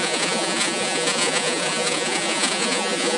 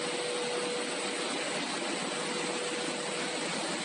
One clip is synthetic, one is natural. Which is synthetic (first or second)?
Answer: first